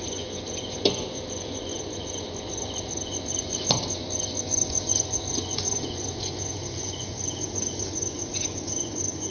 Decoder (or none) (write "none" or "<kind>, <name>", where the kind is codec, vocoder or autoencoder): vocoder, Vocos